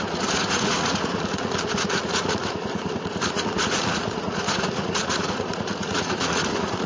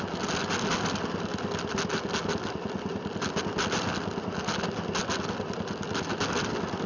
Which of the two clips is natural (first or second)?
second